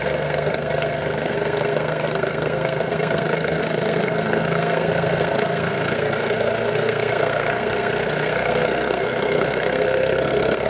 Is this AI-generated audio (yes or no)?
yes